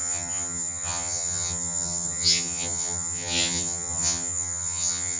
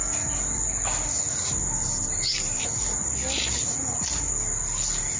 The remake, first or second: first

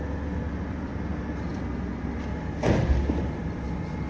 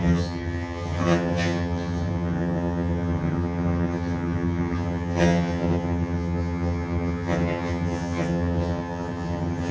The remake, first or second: second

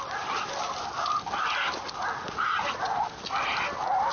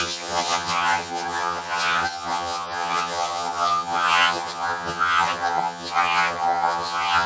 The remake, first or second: second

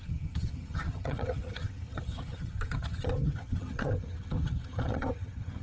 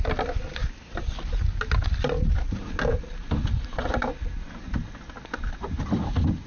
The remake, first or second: first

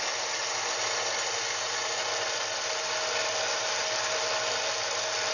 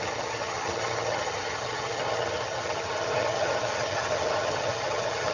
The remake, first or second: second